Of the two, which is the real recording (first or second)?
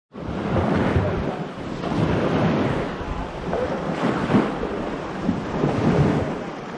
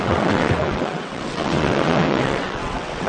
first